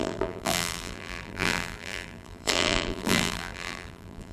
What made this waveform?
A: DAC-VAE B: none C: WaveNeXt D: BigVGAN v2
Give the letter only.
D